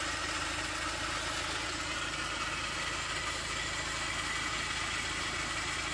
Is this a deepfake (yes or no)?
no